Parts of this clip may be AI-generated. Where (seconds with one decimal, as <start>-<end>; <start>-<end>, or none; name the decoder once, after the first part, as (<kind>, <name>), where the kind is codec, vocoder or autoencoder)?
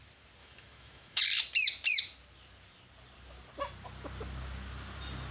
0.4-1.2 (autoencoder, DAC-VAE)